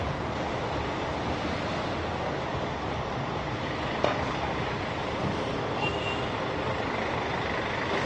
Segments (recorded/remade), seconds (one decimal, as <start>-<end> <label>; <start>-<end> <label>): 0.0-8.1 recorded